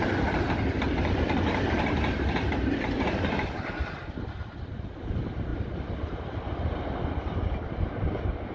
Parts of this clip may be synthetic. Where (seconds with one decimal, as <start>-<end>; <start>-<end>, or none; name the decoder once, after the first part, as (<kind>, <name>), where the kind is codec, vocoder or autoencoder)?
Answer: none